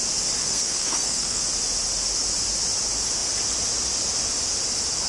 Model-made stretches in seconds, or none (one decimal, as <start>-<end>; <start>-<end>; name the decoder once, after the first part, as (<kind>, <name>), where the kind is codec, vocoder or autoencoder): 0.4-1.4 (codec, SNAC)